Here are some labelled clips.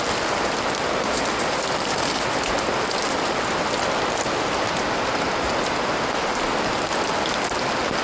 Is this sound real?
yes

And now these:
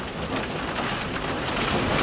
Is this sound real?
yes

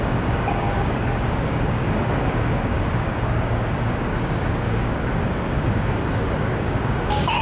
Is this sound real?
no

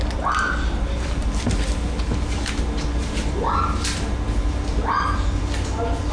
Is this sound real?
yes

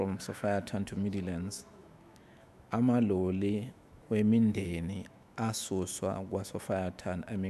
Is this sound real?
no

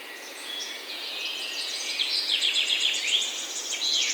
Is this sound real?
no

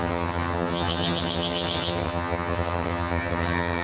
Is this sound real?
no